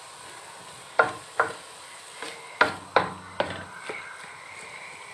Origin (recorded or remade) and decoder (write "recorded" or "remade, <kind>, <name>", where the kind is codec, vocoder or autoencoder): recorded